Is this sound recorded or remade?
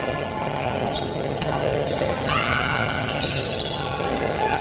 remade